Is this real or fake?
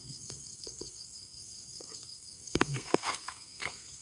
fake